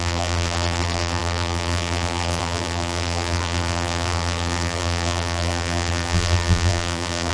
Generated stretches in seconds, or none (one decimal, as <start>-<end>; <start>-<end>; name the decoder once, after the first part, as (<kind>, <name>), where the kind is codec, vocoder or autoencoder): 0.0-7.3 (vocoder, BigVGAN v2)